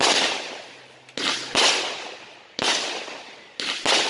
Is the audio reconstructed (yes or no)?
no